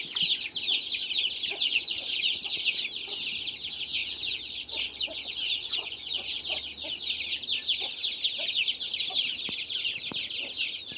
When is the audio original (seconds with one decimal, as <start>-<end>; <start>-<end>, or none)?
0.0-1.7; 2.4-4.0; 6.4-11.0

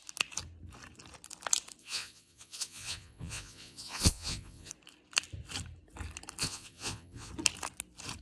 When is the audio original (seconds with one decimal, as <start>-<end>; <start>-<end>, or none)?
0.0-1.8; 4.7-6.4; 7.3-8.2

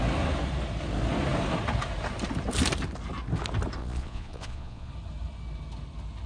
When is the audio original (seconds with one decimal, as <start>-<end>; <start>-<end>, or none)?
0.0-3.8; 4.9-6.3

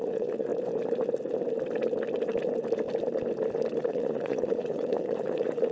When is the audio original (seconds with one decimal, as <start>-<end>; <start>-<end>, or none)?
0.5-3.9

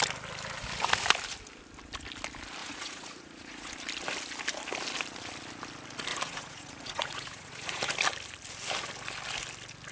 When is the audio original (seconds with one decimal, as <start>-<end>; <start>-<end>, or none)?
0.0-2.6; 3.7-6.1; 7.9-9.9

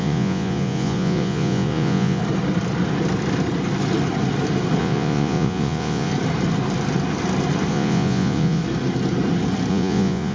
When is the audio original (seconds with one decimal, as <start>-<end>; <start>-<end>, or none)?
2.2-4.8; 6.1-7.7; 8.6-9.7

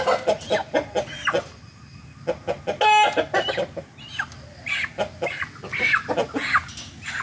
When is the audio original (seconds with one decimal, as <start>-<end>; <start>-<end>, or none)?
0.0-7.2

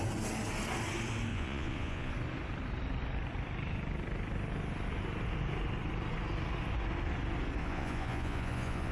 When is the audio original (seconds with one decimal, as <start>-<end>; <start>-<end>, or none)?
0.0-1.3; 2.1-7.6